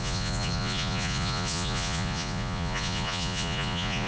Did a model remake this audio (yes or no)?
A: yes